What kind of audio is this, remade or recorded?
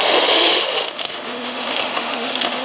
remade